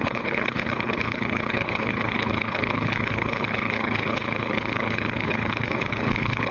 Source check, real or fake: fake